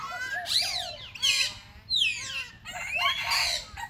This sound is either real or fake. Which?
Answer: real